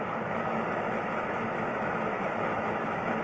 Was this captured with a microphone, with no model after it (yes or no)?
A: no